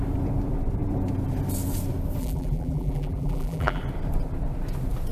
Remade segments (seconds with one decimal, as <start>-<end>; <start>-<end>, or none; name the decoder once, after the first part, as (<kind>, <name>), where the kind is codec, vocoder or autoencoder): 2.2-3.8 (vocoder, BigVGAN v2)